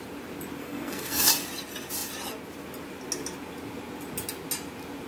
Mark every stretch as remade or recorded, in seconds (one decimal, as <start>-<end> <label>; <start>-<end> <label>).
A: 0.0-0.6 recorded; 0.6-1.3 remade; 1.3-5.1 recorded